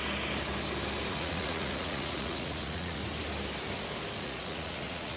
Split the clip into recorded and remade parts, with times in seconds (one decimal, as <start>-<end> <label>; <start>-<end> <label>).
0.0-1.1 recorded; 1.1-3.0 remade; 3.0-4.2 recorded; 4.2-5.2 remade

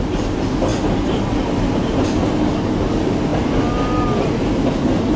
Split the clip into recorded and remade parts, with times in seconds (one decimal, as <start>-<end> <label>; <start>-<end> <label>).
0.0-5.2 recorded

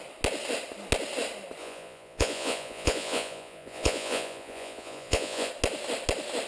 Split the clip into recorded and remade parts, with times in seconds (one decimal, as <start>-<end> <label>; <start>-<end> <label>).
0.0-1.6 recorded; 1.6-5.5 remade; 5.5-6.5 recorded

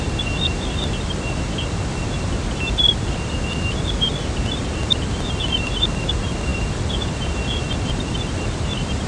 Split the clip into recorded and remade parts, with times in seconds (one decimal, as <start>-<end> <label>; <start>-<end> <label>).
0.0-9.1 recorded

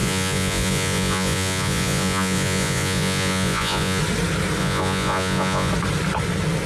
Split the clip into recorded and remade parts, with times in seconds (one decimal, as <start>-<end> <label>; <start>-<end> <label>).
0.0-4.0 remade; 4.0-4.6 recorded; 4.6-5.7 remade; 5.7-6.7 recorded

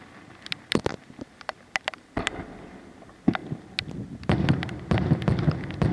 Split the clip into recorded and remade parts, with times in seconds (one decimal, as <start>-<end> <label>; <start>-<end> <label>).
0.0-5.9 recorded

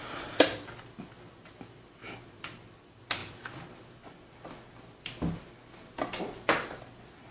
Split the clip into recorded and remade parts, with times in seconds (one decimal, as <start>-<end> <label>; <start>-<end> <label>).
0.0-7.3 recorded

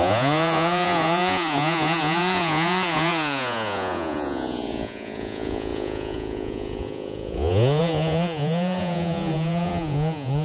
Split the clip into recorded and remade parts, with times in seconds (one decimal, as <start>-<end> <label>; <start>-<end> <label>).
0.0-10.4 remade